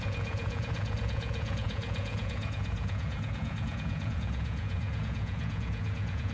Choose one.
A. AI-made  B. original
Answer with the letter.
A